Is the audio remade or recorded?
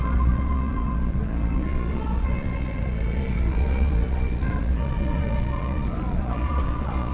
remade